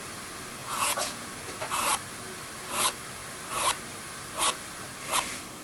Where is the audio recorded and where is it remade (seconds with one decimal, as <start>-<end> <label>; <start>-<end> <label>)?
0.0-0.6 recorded; 0.6-1.2 remade; 1.2-5.6 recorded